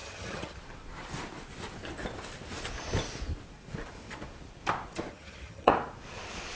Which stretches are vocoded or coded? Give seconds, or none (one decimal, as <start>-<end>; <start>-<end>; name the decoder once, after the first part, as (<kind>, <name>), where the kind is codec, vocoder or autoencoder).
0.0-0.6 (vocoder, HiFi-GAN); 5.1-5.7